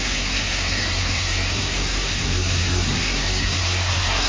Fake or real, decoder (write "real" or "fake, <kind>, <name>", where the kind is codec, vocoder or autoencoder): fake, codec, SNAC